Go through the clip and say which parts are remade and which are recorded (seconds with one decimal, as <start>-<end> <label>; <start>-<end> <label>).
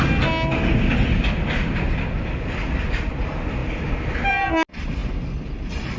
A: 0.0-6.0 recorded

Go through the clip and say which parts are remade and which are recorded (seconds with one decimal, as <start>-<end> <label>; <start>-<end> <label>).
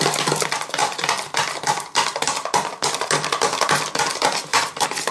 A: 0.0-4.5 recorded; 4.5-5.1 remade